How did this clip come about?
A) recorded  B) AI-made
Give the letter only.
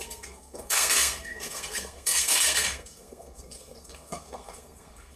B